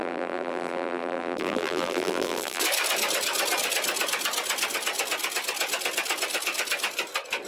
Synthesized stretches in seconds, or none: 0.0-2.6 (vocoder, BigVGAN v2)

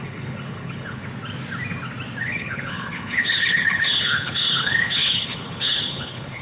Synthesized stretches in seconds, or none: 0.0-1.0 (codec, HILCodec); 2.2-6.4

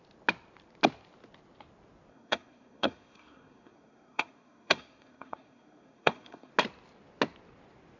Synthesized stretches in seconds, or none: 2.1-6.5 (codec, SNAC)